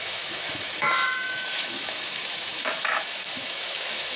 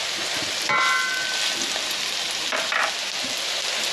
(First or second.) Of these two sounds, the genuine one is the second